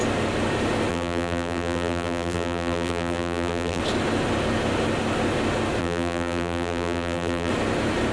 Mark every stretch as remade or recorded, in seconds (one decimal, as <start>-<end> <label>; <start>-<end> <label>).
0.0-0.9 recorded; 0.9-3.8 remade; 3.8-5.8 recorded; 5.8-7.5 remade; 7.5-8.1 recorded